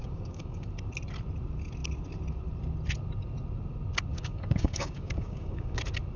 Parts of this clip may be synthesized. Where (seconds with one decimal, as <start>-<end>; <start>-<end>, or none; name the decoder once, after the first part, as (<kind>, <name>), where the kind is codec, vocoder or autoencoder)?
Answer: 0.0-0.7 (codec, DAC); 4.1-5.8